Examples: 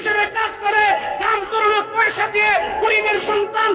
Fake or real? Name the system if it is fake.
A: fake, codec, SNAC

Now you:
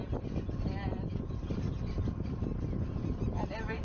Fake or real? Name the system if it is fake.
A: real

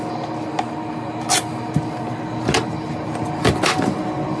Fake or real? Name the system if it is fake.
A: real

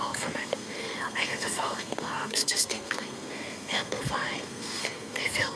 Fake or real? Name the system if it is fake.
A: fake, codec, SNAC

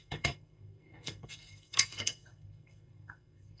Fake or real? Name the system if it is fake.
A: fake, codec, SNAC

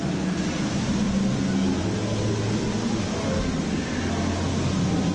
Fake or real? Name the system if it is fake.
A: real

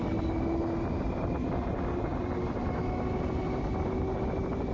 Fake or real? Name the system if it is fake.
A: real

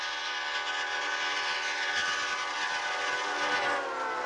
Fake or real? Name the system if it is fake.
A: real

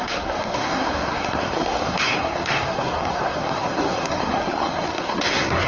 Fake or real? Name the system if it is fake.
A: fake, codec, SNAC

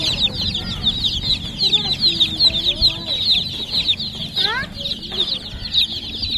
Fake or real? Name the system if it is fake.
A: real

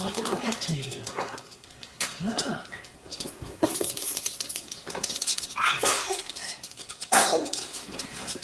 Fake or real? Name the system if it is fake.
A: fake, codec, SNAC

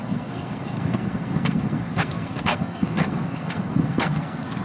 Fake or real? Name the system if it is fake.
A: fake, codec, SNAC